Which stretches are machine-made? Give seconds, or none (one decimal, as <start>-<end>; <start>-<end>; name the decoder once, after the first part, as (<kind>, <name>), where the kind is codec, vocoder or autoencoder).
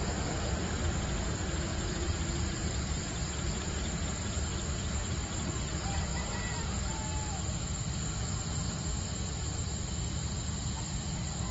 0.0-6.1 (vocoder, BigVGAN v2); 7.5-11.5